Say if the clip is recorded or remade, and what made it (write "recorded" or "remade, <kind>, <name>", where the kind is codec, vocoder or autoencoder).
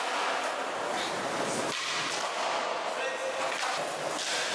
recorded